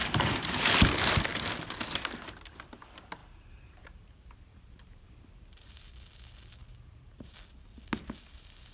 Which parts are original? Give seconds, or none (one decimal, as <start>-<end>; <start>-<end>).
0.7-3.2; 5.8-6.6; 7.3-8.7